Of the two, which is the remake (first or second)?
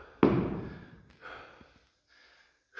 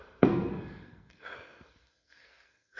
second